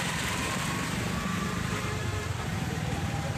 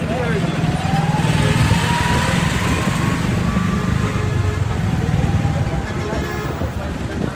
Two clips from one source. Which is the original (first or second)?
second